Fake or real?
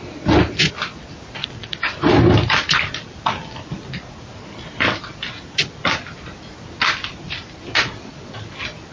real